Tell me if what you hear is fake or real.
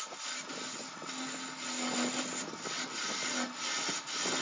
real